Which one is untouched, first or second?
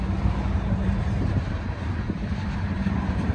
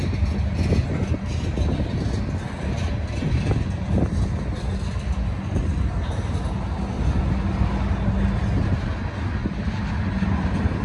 second